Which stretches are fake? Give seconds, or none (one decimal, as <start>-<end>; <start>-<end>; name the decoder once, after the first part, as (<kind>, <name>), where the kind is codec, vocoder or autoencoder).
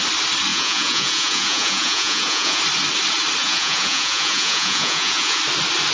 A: 0.5-2.6 (vocoder, Vocos); 3.4-5.4